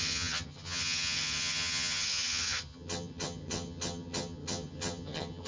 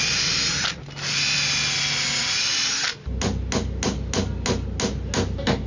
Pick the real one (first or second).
second